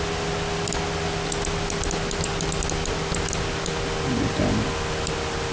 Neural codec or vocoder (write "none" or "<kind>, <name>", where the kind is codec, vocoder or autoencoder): none